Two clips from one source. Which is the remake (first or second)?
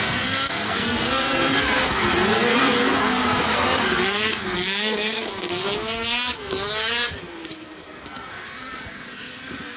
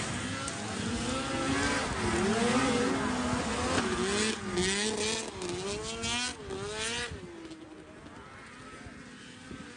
first